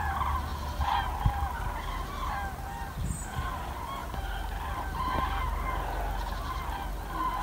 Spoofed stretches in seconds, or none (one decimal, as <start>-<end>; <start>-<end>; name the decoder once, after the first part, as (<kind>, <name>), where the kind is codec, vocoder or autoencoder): 0.0-0.5 (vocoder, BigVGAN v2); 3.5-4.0